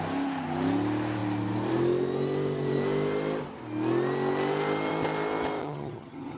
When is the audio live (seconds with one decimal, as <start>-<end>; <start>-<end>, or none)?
0.0-5.6